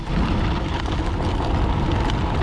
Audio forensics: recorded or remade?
recorded